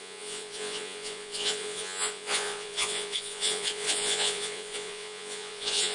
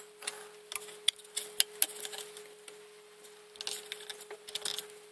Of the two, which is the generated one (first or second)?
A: first